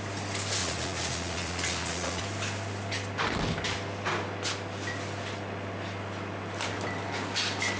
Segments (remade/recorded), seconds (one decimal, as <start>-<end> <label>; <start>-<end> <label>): 0.0-0.6 recorded; 0.6-2.2 remade; 2.2-7.8 recorded